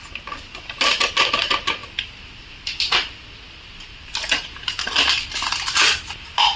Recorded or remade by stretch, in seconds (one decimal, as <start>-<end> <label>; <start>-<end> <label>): 0.0-6.6 recorded